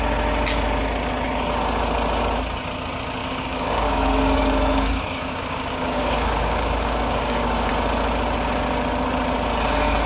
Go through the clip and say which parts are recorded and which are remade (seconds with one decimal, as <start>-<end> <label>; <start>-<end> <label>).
0.0-3.2 recorded; 3.2-7.7 remade; 7.7-10.1 recorded

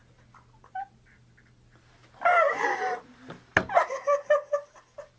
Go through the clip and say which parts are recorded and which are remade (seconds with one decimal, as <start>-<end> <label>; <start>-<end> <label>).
0.0-5.2 recorded

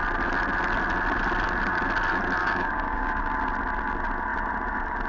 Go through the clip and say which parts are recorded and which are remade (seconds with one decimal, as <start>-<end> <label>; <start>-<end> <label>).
0.0-2.4 recorded; 2.4-3.2 remade; 3.2-5.1 recorded

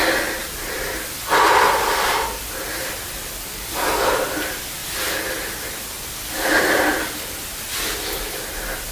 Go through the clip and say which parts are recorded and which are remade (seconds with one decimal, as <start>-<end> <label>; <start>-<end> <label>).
0.0-3.5 recorded; 3.5-4.1 remade; 4.1-8.9 recorded

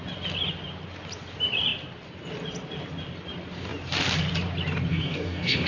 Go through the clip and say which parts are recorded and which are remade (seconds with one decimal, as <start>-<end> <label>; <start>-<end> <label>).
0.0-4.9 recorded; 4.9-5.7 remade

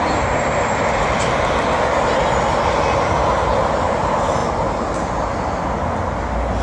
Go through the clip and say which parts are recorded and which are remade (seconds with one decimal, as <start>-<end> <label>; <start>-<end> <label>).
0.0-6.6 recorded